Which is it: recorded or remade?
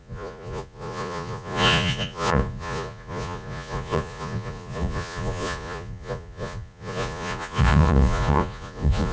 remade